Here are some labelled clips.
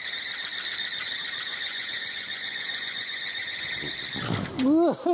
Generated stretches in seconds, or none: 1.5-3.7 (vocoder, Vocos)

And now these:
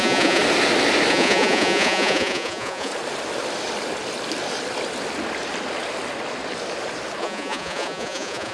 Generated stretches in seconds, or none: 0.0-0.4 (vocoder, Vocos); 1.1-2.9; 7.2-8.5

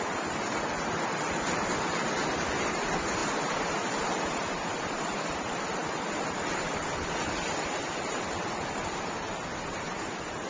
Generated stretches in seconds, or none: none

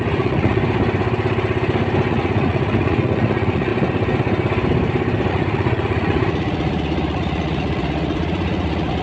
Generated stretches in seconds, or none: 0.0-0.6 (vocoder, Vocos); 2.1-3.7; 5.3-9.0

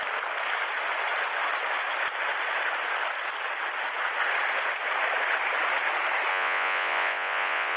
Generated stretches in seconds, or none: 6.3-7.8 (vocoder, Vocos)

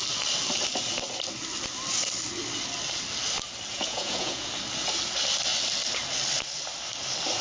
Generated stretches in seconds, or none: 3.7-4.5 (vocoder, Vocos)

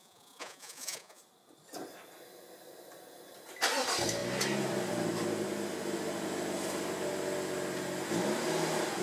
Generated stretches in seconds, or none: 0.0-1.2 (vocoder, Vocos)